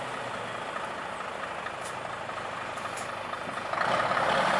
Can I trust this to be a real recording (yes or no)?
yes